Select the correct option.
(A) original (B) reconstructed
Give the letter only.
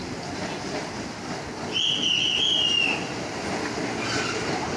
A